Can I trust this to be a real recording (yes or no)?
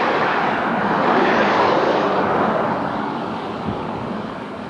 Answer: no